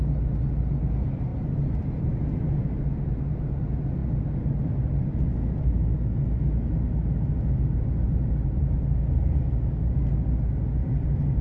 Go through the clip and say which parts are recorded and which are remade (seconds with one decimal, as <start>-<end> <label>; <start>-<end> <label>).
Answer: 0.0-11.4 recorded